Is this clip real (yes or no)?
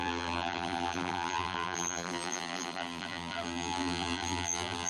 no